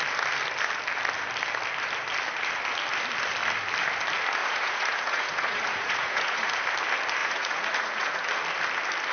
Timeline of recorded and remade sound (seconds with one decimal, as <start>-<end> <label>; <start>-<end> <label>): 0.0-4.4 recorded; 4.4-6.5 remade; 6.5-7.2 recorded; 7.2-8.3 remade; 8.3-9.1 recorded